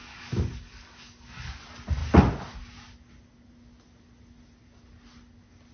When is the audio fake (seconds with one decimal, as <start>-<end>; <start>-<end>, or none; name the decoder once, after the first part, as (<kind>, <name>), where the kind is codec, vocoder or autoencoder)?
0.0-1.6 (codec, DAC)